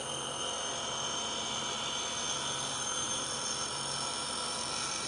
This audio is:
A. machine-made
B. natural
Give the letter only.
A